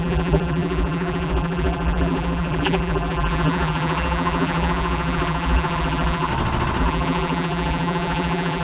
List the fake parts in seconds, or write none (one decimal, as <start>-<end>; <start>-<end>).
0.0-6.3; 6.8-8.6